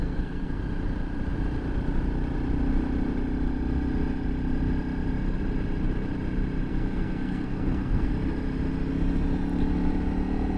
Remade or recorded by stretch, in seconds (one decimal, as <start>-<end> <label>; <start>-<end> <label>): 0.0-0.6 remade; 0.6-6.7 recorded; 6.7-8.1 remade; 8.1-10.6 recorded